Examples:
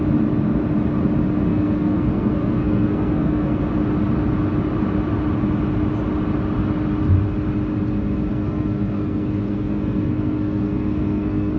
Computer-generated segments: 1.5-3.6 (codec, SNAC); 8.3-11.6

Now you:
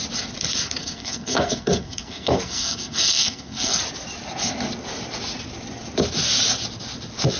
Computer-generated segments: 0.8-3.8 (codec, SNAC)

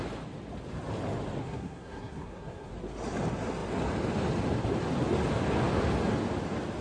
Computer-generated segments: 1.4-2.7 (codec, SNAC)

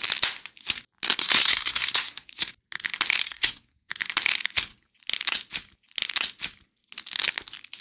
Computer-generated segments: 1.2-2.5 (codec, SNAC); 3.2-3.9

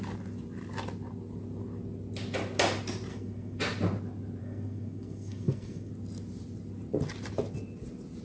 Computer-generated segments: 3.1-3.6 (codec, SNAC); 4.4-5.9